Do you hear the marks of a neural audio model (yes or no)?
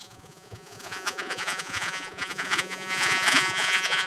yes